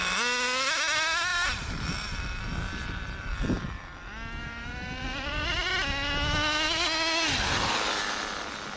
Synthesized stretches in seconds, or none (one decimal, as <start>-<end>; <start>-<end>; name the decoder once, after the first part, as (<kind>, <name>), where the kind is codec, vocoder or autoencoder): 4.4-5.7 (vocoder, BigVGAN v2)